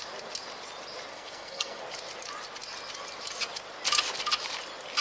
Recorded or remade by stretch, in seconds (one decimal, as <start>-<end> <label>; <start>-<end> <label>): 0.0-1.1 recorded; 1.1-1.8 remade; 1.8-5.0 recorded